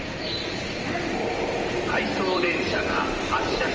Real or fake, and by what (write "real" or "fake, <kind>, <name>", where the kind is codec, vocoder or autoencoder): fake, vocoder, BigVGAN v2